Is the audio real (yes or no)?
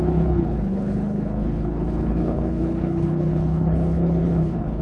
no